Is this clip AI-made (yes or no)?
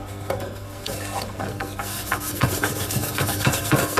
yes